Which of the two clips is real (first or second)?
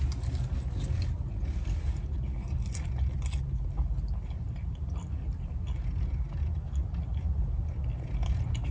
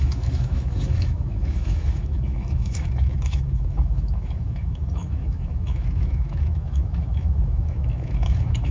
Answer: first